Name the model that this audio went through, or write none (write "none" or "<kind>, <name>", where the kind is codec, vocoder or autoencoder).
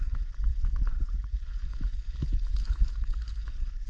codec, HILCodec